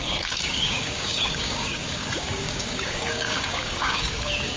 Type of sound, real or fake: fake